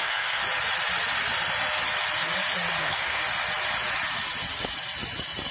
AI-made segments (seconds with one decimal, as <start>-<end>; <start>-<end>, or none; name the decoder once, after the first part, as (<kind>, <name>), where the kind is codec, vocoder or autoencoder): 0.0-0.4 (codec, SNAC); 2.8-3.2